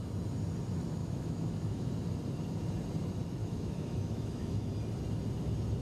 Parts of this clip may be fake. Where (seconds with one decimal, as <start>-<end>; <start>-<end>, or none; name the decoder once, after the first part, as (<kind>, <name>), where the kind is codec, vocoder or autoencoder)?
1.0-1.9 (autoencoder, DAC-VAE); 3.4-4.7